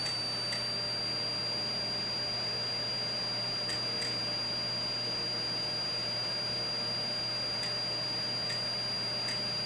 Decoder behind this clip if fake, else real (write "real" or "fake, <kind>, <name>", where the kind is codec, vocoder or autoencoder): real